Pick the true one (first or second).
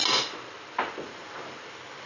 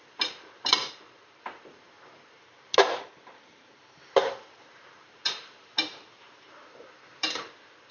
first